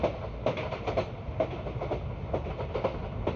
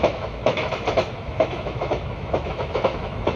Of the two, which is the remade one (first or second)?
second